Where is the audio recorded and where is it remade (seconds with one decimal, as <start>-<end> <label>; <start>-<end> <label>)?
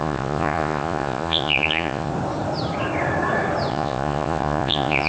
0.0-2.1 remade; 2.1-3.7 recorded; 3.7-5.1 remade